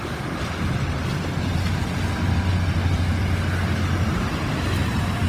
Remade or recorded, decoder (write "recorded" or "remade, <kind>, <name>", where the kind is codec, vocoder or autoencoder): recorded